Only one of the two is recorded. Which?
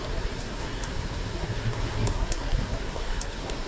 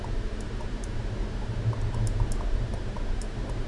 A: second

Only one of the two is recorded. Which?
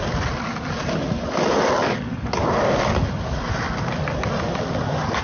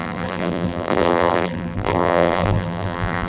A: first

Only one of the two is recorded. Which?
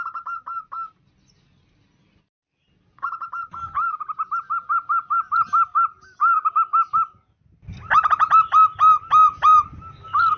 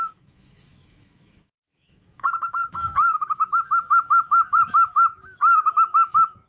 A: first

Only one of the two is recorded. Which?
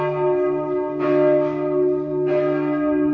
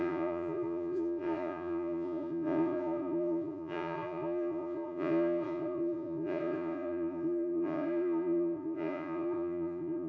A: first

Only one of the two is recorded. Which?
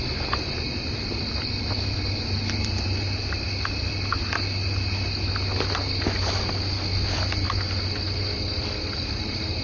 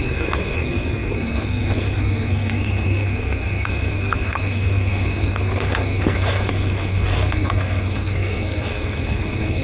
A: first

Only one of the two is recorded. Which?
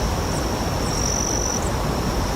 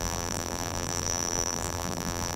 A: first